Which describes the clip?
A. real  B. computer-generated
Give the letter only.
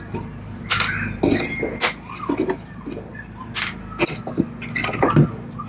A